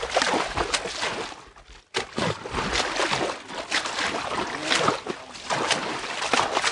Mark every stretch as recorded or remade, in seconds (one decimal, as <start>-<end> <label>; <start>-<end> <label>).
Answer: 0.0-6.7 recorded